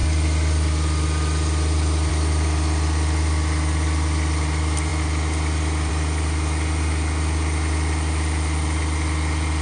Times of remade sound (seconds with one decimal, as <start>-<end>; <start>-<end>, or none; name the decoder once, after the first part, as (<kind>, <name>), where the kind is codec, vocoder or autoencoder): none